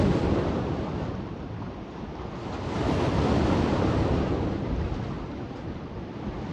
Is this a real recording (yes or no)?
yes